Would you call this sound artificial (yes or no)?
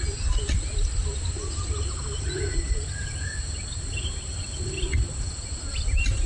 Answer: no